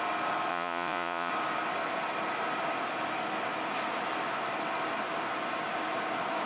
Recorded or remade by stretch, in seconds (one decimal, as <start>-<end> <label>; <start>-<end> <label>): 0.0-0.5 recorded; 0.5-1.3 remade; 1.3-6.5 recorded